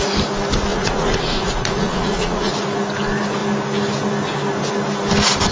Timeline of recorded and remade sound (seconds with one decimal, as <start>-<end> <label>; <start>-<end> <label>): 0.0-0.7 recorded; 0.7-2.5 remade; 2.5-5.5 recorded